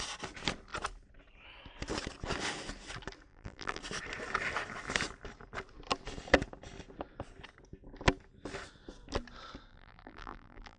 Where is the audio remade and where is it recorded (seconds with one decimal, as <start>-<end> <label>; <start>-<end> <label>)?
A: 0.0-3.3 recorded; 3.3-3.8 remade; 3.8-9.7 recorded; 9.7-10.8 remade